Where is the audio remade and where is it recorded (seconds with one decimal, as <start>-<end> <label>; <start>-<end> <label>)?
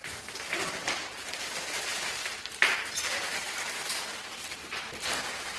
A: 0.0-5.6 recorded